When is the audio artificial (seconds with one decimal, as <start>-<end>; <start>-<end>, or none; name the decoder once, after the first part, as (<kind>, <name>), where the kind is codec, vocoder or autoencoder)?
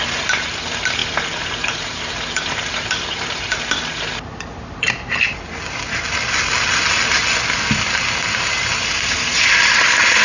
none